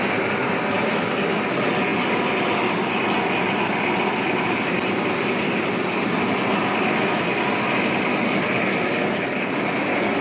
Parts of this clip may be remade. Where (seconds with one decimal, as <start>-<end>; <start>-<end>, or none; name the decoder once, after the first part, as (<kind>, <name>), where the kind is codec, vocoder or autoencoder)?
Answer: none